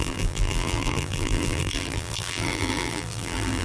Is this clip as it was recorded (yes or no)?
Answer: no